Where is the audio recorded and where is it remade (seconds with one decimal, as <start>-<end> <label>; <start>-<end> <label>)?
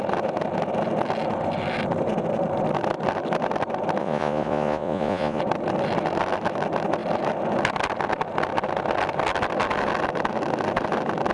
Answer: 0.0-4.0 recorded; 4.0-5.4 remade; 5.4-11.3 recorded